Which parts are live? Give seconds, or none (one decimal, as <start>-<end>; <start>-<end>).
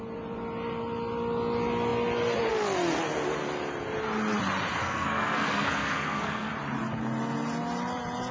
0.0-4.8; 6.5-8.3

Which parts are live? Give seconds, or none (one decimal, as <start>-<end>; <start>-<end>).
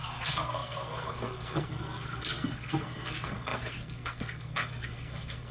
none